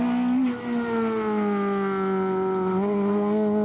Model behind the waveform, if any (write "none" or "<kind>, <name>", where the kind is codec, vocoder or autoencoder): none